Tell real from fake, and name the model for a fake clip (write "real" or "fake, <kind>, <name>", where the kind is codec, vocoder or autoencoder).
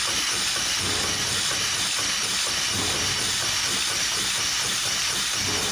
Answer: real